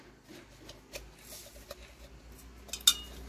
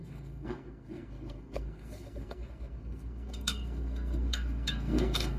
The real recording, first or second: first